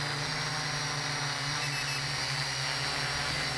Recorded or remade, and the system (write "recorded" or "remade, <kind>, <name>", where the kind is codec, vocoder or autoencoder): recorded